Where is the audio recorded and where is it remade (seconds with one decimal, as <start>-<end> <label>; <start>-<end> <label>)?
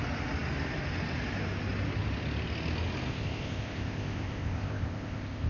0.0-3.1 recorded; 3.1-5.5 remade